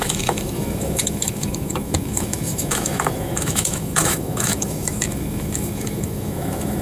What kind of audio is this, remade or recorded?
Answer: remade